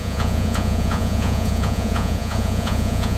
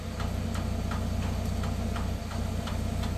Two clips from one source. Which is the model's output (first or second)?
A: first